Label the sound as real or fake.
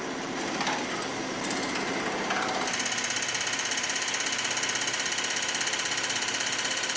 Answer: real